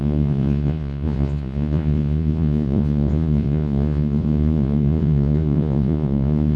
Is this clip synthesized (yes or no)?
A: yes